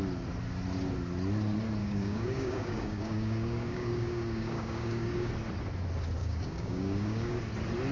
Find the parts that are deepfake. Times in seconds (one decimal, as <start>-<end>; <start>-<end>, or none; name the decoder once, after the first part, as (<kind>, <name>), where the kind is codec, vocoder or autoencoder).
1.8-5.3 (codec, DAC); 6.2-7.4